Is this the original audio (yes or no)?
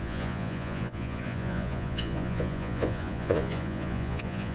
no